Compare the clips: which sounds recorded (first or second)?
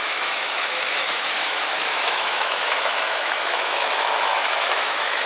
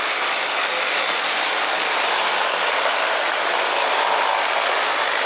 second